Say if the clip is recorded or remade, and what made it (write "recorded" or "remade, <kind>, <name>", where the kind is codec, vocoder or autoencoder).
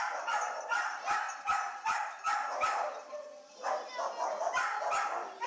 recorded